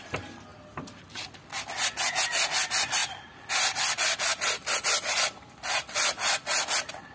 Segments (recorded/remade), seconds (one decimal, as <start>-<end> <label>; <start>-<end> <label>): 0.0-7.1 recorded

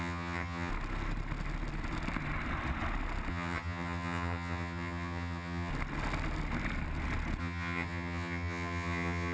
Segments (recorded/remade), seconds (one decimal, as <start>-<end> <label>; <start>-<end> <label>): 0.0-0.7 remade; 0.7-3.3 recorded; 3.3-5.7 remade; 5.7-7.4 recorded; 7.4-9.3 remade